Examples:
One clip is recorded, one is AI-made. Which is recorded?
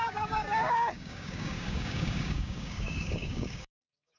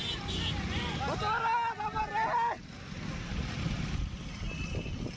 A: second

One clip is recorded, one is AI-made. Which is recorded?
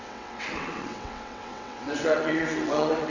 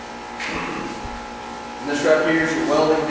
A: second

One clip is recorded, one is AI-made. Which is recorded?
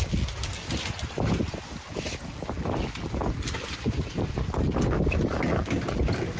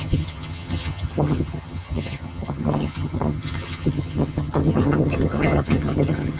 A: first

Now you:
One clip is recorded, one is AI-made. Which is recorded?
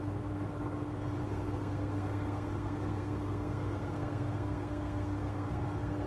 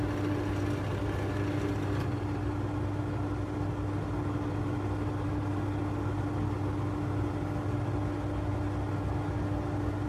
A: second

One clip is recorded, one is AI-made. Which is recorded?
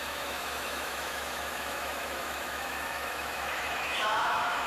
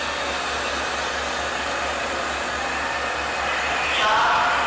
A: second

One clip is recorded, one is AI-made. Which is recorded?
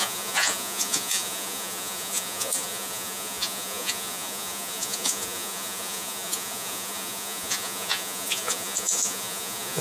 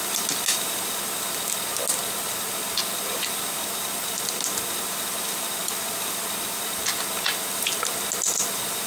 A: second